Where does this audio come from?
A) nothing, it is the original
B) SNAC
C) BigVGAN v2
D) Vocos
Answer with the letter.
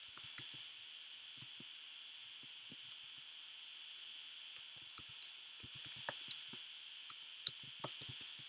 A